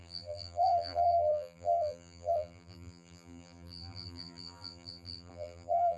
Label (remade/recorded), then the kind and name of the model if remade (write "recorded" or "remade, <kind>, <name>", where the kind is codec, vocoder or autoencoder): remade, vocoder, BigVGAN v2